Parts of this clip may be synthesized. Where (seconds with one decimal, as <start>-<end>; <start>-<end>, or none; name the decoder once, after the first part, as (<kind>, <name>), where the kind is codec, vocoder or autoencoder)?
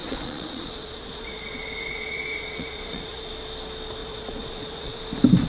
0.0-3.3 (vocoder, Vocos); 4.0-5.0